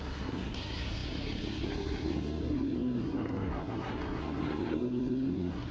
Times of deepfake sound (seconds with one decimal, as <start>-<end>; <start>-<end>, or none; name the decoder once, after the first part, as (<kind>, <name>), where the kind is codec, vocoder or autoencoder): 0.0-5.7 (codec, SNAC)